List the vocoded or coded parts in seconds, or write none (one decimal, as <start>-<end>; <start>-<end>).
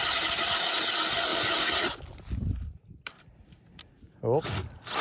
none